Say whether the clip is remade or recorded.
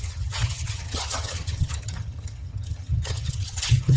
remade